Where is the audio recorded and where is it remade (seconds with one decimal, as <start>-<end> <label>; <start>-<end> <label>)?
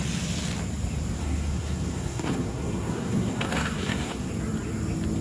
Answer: 0.0-1.2 recorded; 1.2-4.3 remade; 4.3-5.2 recorded